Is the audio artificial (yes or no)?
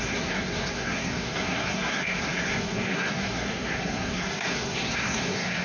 yes